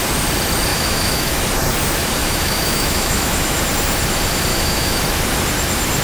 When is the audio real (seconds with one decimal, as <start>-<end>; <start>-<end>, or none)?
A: 0.0-0.7; 1.4-2.2; 3.6-4.5; 5.0-6.0